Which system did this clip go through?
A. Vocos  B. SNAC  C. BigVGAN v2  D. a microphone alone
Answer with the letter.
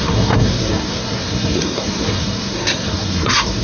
B